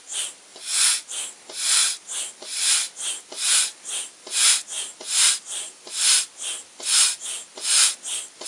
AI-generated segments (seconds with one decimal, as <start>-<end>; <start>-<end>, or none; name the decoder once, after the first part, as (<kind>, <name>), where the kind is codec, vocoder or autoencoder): 0.5-1.1 (vocoder, Vocos)